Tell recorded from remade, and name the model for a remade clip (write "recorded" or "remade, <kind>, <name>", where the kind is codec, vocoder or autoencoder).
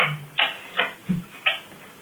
recorded